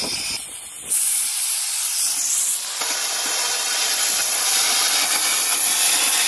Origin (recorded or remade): recorded